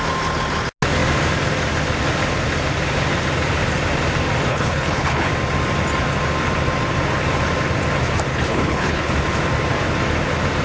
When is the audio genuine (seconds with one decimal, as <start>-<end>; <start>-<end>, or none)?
0.0-4.5; 5.3-8.3; 9.1-10.6